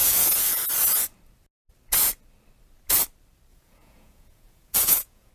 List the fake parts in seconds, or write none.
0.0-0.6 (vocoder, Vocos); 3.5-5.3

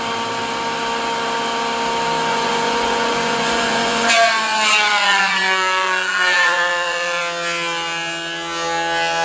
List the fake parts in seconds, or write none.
2.3-7.2 (vocoder, Vocos)

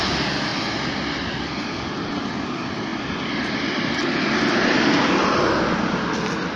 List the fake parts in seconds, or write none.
none

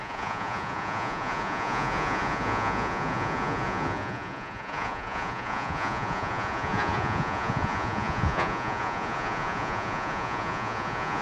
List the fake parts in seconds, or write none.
0.0-11.2 (vocoder, Vocos)

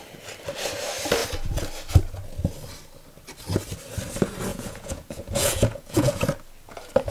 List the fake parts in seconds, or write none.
4.5-6.2 (vocoder, Vocos)

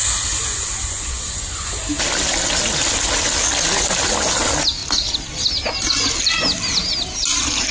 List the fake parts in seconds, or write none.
0.4-1.7 (vocoder, Vocos)

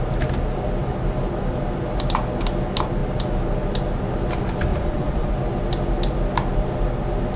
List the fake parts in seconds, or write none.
4.7-5.3 (vocoder, Vocos)